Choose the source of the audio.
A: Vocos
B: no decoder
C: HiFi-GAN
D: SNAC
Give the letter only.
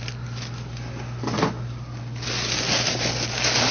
B